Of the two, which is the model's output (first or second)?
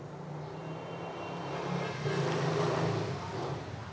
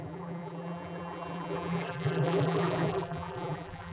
second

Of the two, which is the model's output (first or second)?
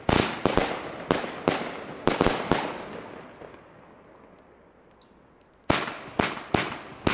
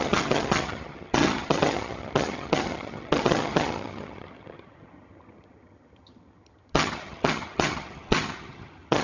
second